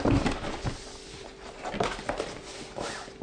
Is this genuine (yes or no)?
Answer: yes